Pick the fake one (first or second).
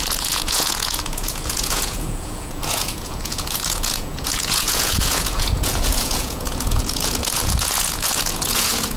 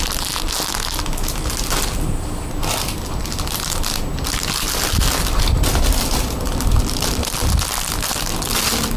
first